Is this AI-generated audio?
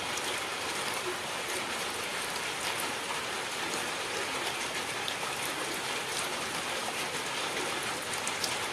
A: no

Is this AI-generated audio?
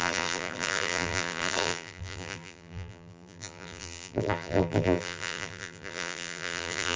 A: yes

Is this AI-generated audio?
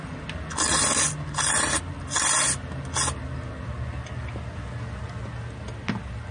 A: no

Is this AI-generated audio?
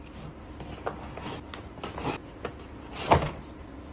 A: no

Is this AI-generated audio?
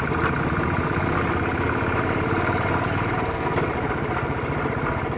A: no